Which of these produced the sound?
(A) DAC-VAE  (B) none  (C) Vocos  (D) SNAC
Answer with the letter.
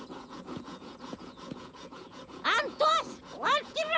C